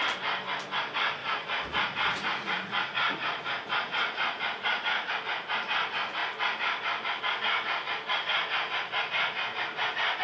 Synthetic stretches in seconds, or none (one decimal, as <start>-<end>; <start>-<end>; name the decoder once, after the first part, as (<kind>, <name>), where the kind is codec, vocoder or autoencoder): 1.2-5.1 (vocoder, Vocos)